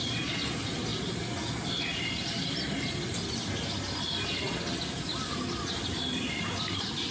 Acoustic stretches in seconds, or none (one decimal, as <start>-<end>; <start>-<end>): 0.0-7.1